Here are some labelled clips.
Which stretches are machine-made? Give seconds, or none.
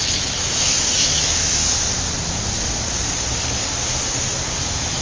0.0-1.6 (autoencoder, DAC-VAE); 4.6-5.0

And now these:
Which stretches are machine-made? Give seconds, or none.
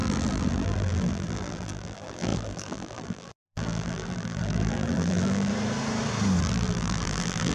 0.0-5.5 (vocoder, BigVGAN v2); 6.4-7.5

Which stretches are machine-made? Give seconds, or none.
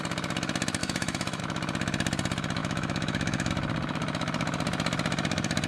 0.8-1.4 (autoencoder, DAC-VAE); 2.6-3.5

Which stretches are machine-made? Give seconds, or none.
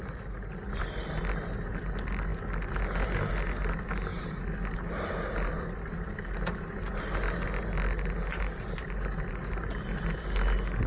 none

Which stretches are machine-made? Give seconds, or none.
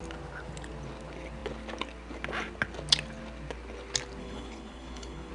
4.2-5.3 (codec, HILCodec)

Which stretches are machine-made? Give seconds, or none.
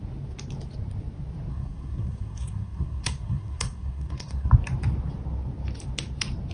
1.5-4.5 (codec, SNAC)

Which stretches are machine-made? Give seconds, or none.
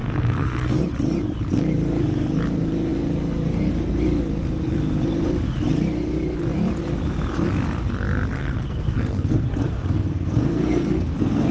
0.0-0.8 (codec, SNAC); 8.4-11.5